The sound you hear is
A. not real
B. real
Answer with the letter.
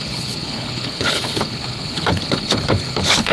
A